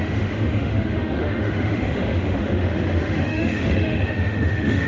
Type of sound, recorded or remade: remade